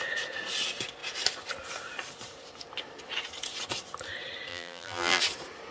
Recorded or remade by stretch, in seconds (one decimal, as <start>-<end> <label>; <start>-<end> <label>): 0.0-4.5 recorded; 4.5-5.2 remade; 5.2-5.7 recorded